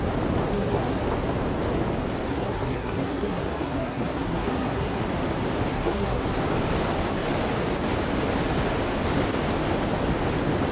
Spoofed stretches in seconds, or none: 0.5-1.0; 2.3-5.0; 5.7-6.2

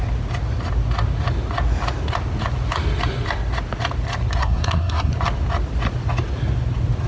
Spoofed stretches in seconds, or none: 4.4-5.1